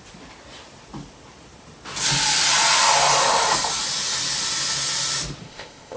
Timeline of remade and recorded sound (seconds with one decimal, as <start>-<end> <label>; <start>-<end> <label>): 0.0-5.4 recorded; 5.4-6.0 remade